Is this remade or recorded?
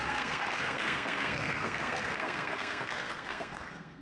remade